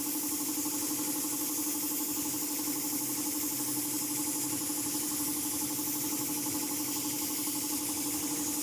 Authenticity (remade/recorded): recorded